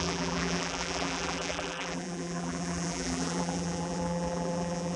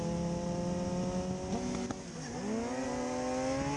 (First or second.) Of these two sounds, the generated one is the first